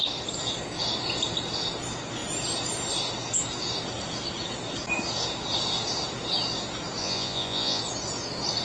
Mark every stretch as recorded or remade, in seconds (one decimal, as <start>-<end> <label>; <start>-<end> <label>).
0.0-7.0 recorded; 7.0-7.8 remade; 7.8-8.6 recorded